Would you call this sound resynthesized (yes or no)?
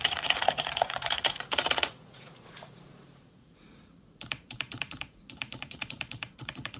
yes